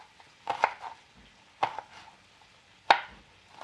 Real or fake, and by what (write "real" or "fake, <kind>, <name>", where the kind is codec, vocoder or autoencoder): real